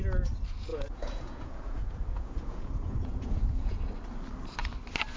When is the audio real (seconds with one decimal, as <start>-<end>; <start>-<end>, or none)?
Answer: 0.0-0.7; 3.8-5.2